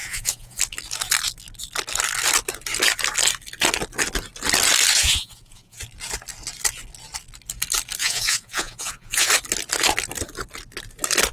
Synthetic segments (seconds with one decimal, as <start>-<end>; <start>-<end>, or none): 0.0-0.6; 5.0-5.8; 8.0-9.3